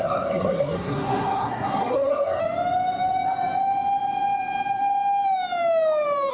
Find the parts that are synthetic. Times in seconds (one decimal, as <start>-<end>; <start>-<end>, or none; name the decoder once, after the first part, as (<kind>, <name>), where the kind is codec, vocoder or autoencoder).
0.0-2.4 (codec, SNAC)